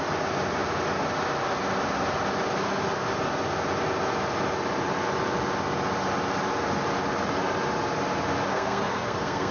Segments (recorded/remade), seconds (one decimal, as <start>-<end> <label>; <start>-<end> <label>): 0.0-8.5 recorded; 8.5-9.5 remade